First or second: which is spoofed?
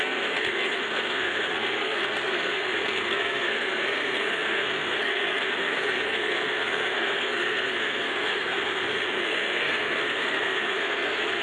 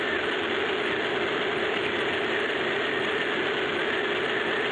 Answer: first